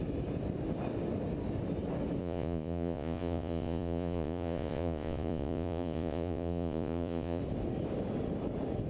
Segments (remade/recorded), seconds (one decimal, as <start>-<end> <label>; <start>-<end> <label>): 0.0-2.2 recorded; 2.2-7.4 remade; 7.4-8.9 recorded